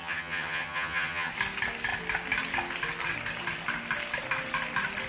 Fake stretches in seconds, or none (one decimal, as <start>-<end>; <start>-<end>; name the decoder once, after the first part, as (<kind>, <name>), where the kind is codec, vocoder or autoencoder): 0.0-1.3 (vocoder, HiFi-GAN)